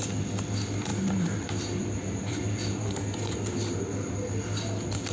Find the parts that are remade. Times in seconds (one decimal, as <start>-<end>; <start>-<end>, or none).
0.9-3.8